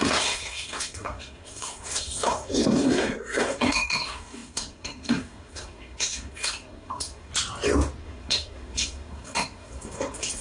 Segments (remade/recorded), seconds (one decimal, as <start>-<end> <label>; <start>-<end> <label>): 0.0-7.3 remade; 7.3-8.0 recorded; 8.0-10.4 remade